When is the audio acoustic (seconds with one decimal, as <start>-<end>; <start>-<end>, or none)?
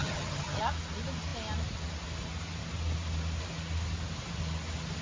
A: 0.6-5.0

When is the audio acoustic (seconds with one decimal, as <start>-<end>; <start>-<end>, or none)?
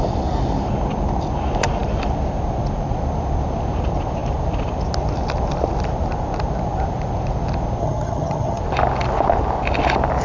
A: 0.0-7.8; 8.6-10.2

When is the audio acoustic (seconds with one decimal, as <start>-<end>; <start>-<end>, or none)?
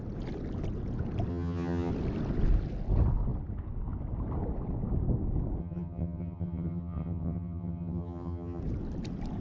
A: 0.0-1.3; 1.9-5.6; 8.6-9.4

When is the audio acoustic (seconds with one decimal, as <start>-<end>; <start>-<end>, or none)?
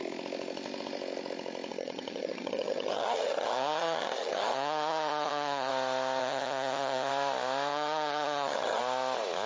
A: 0.0-1.7; 5.7-6.2; 7.1-7.7; 8.8-9.5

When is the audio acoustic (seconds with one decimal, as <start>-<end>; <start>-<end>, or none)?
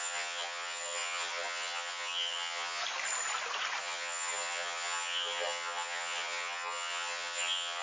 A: 2.8-3.8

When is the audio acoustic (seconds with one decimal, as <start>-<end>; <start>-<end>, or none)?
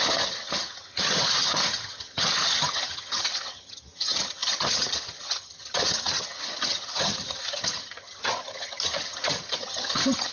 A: none